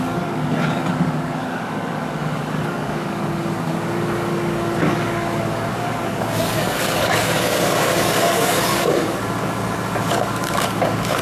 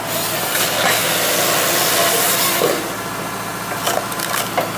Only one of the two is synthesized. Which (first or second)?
first